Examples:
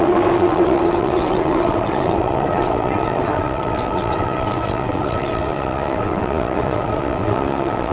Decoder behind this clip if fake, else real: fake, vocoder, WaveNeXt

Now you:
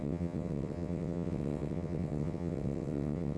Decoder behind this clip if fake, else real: fake, vocoder, WaveNeXt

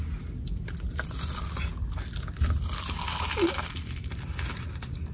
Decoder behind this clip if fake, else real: real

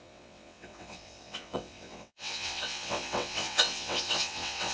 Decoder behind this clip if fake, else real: fake, vocoder, WaveNeXt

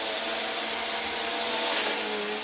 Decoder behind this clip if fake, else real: real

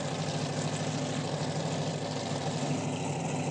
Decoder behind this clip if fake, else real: real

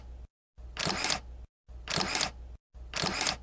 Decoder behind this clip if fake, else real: real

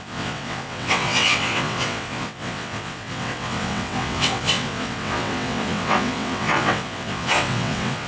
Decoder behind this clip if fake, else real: fake, vocoder, WaveNeXt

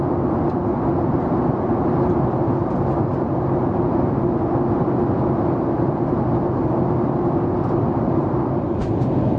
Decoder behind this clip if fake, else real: real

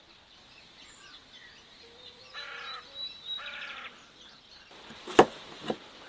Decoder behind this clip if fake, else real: real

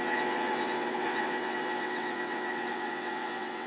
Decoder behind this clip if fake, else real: fake, vocoder, WaveNeXt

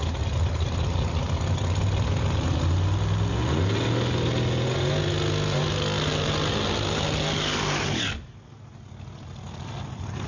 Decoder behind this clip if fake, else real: real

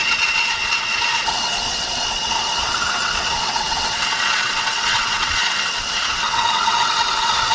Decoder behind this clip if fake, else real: fake, vocoder, WaveNeXt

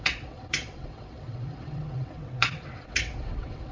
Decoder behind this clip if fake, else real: fake, vocoder, WaveNeXt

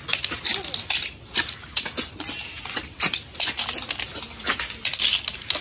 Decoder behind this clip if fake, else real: real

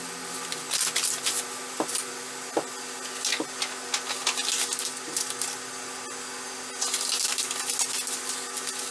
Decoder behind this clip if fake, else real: real